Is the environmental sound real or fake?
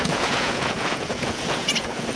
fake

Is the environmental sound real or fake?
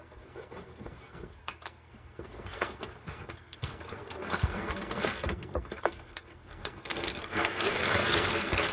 fake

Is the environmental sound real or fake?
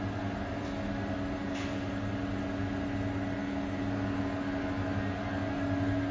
real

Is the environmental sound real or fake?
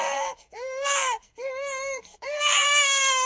fake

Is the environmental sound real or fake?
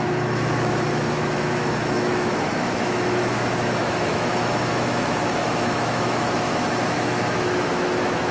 fake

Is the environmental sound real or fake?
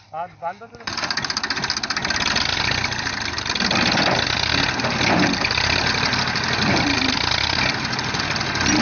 real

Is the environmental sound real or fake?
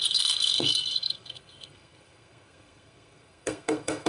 fake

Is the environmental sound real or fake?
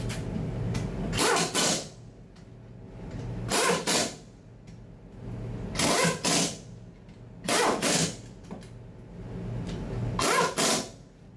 real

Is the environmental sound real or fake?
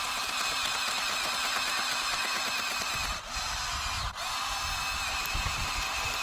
real